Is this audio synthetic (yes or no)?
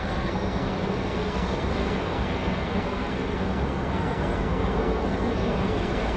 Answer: yes